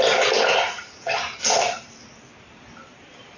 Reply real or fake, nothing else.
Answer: real